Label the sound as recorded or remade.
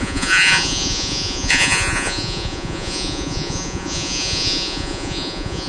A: remade